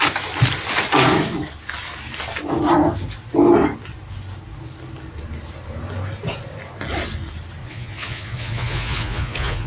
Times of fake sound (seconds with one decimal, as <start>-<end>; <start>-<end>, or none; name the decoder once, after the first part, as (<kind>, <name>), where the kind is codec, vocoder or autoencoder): 7.6-9.7 (vocoder, Vocos)